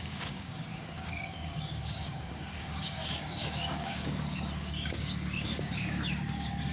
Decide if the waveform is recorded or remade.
remade